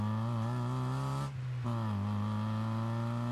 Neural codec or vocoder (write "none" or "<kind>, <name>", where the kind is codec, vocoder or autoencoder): none